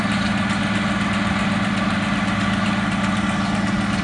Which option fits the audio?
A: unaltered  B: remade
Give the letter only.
A